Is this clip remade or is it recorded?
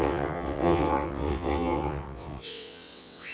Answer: remade